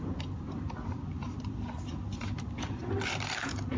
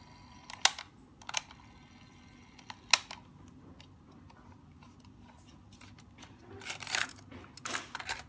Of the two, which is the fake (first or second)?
first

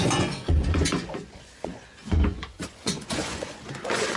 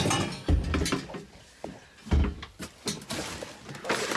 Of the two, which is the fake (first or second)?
first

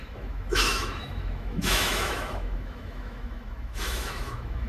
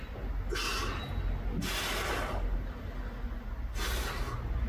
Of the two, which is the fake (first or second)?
first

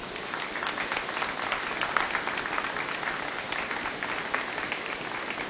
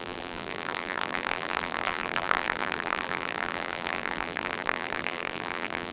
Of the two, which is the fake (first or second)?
second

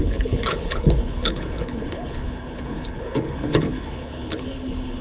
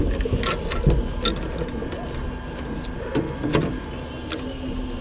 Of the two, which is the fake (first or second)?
first